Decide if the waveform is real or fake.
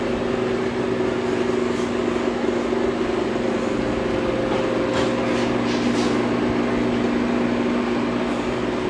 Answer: real